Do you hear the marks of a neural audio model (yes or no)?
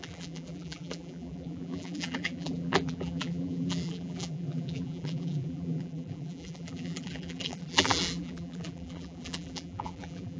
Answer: yes